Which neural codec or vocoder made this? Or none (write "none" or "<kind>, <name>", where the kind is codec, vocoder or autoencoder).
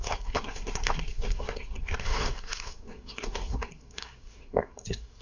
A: codec, SNAC